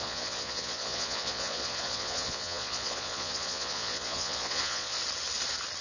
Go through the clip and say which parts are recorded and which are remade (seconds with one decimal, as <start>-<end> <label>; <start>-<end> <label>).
0.0-5.0 remade; 5.0-5.8 recorded